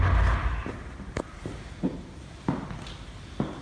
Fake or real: real